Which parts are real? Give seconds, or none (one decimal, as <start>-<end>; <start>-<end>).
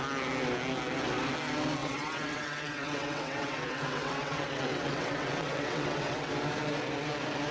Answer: 0.0-1.8; 6.3-7.5